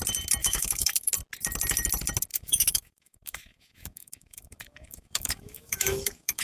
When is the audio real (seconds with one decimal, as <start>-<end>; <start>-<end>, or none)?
0.0-0.4; 1.1-2.3